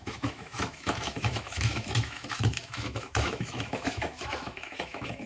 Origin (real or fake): fake